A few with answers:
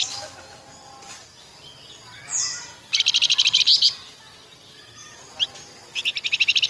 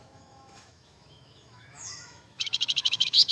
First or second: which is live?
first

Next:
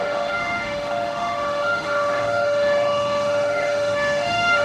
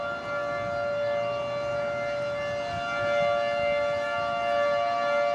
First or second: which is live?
second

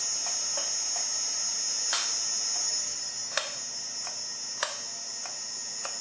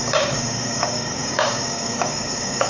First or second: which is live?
first